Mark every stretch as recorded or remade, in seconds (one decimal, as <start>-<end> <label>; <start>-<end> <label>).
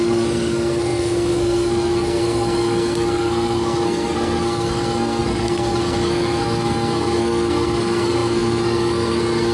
0.0-9.5 remade